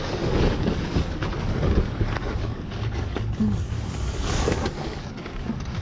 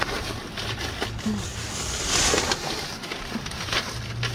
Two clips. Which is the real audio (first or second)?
second